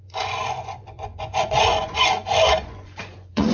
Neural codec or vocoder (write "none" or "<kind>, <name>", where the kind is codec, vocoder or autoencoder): vocoder, Vocos